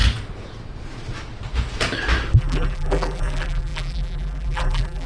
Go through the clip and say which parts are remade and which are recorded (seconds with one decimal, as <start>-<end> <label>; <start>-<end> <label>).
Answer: 0.0-2.4 recorded; 2.4-5.1 remade